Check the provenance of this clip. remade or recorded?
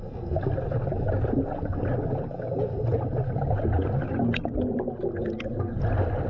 recorded